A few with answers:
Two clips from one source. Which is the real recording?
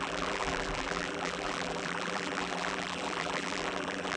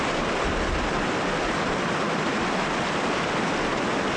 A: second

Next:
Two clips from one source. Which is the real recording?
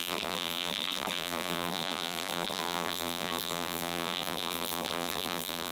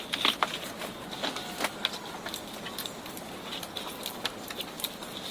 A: second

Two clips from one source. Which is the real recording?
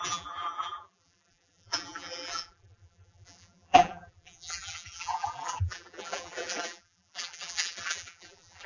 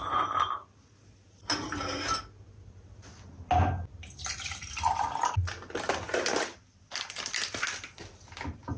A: second